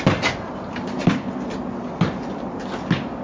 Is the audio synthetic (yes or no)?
no